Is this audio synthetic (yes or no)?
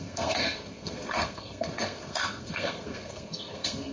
yes